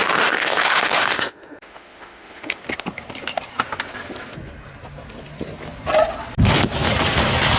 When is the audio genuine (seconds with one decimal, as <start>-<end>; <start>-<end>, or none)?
2.6-7.6

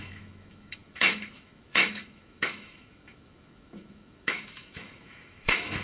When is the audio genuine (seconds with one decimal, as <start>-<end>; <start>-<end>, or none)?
none

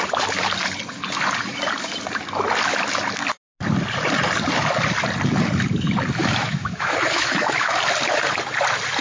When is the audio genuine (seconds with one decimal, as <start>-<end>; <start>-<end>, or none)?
0.0-6.2; 7.7-9.0

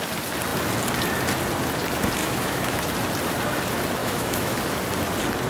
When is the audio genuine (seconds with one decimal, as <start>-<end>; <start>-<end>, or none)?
0.0-2.2; 2.8-4.0; 4.6-5.5

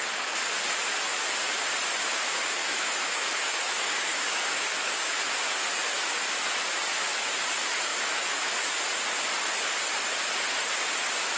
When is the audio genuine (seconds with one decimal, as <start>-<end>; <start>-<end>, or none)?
0.0-2.6; 5.2-7.9; 8.5-11.4